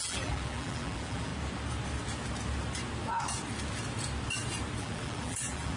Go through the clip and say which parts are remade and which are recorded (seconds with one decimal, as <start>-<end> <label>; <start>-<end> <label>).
0.0-1.3 remade; 1.3-4.8 recorded; 4.8-5.8 remade